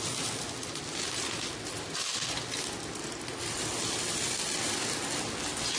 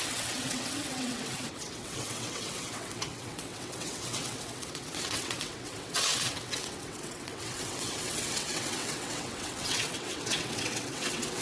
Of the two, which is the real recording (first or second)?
first